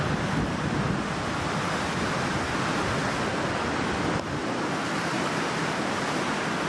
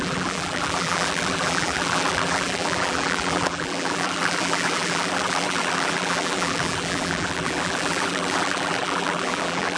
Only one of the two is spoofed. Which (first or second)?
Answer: second